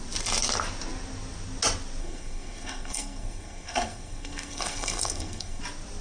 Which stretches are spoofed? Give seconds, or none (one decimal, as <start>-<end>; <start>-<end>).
2.0-5.6